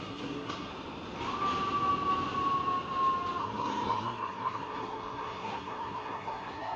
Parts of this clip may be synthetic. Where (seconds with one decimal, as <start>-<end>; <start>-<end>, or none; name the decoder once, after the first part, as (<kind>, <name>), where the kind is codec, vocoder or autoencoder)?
0.0-0.7 (codec, SNAC); 3.4-6.8